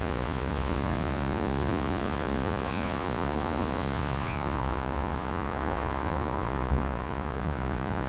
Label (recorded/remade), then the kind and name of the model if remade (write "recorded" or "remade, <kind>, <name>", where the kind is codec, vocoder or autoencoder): remade, vocoder, Vocos